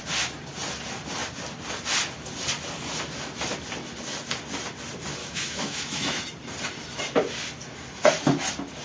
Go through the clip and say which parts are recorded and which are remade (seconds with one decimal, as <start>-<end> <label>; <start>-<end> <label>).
0.0-5.2 recorded; 5.2-6.2 remade; 6.2-8.8 recorded